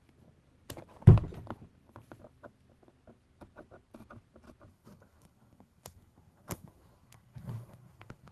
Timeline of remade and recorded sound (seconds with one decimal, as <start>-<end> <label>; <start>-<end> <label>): 0.0-4.7 recorded; 4.7-8.3 remade